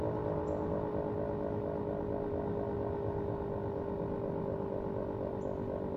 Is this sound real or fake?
real